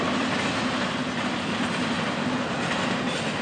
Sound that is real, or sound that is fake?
real